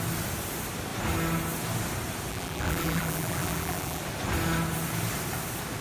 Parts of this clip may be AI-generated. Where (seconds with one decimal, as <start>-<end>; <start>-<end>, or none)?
2.3-4.0